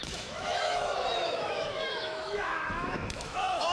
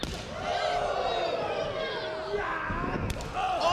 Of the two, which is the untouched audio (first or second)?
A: second